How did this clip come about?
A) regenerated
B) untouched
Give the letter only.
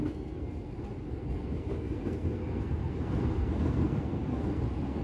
A